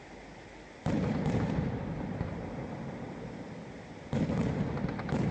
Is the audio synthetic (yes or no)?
no